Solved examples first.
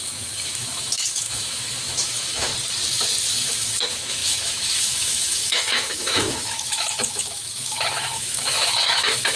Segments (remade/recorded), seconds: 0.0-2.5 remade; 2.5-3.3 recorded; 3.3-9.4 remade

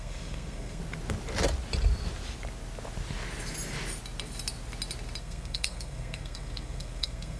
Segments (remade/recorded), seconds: 0.0-0.8 remade; 0.8-5.2 recorded; 5.2-7.4 remade